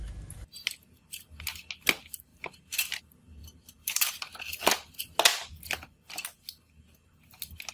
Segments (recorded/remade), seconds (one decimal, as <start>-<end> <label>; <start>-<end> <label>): 0.0-1.1 remade; 1.1-3.4 recorded; 3.4-4.4 remade; 4.4-7.7 recorded